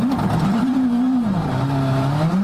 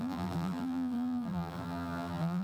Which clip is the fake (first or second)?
second